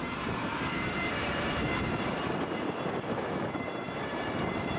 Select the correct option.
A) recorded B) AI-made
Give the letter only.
B